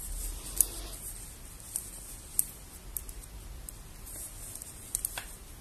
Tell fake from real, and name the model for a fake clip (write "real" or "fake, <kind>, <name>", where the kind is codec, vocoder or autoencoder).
real